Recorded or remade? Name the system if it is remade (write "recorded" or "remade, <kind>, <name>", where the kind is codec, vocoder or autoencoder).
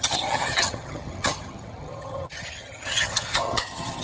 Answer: remade, vocoder, HiFi-GAN